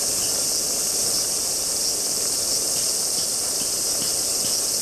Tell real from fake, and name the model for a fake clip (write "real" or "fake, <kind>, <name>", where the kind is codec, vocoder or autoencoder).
real